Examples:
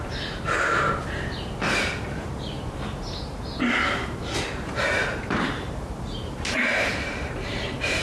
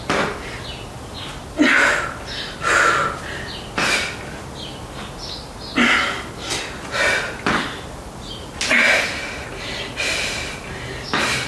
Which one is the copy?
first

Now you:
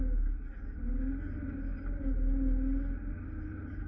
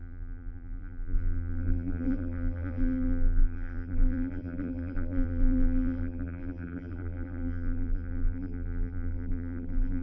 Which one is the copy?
second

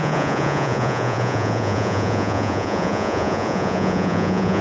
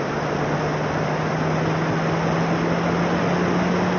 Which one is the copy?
first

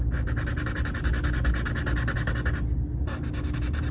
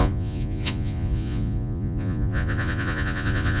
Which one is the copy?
second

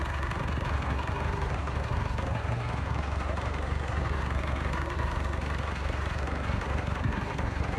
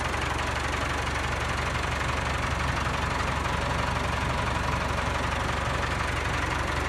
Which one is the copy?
first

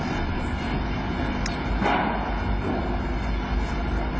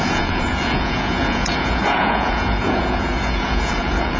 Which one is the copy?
second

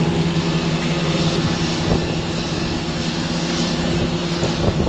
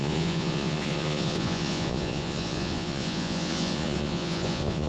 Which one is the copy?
second